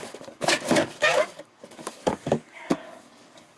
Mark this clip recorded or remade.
remade